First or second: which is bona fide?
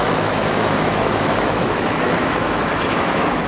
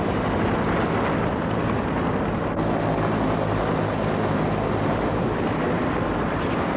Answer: second